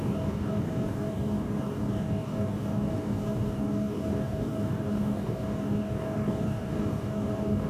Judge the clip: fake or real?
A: fake